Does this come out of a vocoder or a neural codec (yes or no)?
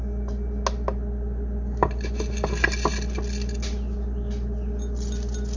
no